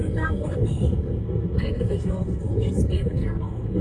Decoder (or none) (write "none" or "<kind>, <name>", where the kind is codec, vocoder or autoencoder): codec, SNAC